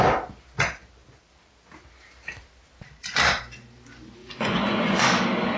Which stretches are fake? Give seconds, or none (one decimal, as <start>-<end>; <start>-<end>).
4.2-5.0